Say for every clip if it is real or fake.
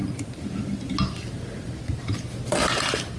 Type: real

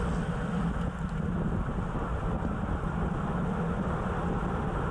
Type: real